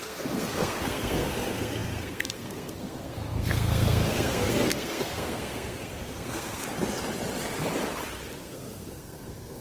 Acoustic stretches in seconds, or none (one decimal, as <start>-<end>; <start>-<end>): 6.6-8.4